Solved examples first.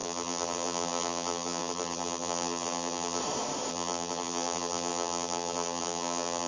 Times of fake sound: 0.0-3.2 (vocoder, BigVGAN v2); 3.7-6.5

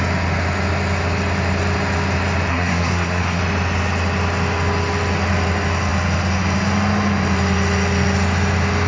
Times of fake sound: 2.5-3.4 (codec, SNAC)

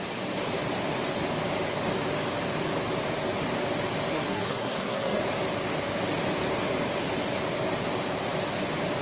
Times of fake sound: 4.1-5.2 (codec, SNAC)